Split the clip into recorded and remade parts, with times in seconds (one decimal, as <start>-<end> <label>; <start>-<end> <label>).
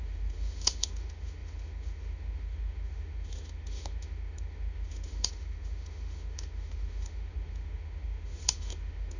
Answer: 0.0-9.2 remade